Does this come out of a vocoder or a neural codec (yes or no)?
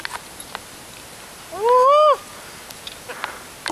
no